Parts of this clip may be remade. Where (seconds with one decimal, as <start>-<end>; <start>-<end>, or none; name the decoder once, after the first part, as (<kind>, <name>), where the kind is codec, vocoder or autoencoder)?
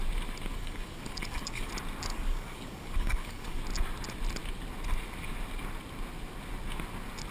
0.5-1.7 (codec, DAC); 2.1-3.6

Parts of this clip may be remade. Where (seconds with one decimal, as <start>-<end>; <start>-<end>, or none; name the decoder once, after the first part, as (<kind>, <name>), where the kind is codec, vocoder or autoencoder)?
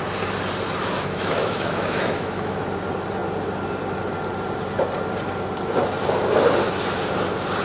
0.8-2.6 (autoencoder, DAC-VAE)